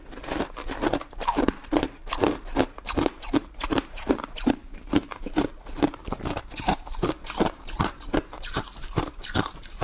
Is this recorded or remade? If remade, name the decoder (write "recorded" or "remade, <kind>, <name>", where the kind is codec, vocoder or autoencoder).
remade, vocoder, BigVGAN v2